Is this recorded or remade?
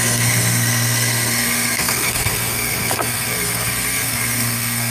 remade